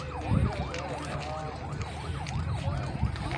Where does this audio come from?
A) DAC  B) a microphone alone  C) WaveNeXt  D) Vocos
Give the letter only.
B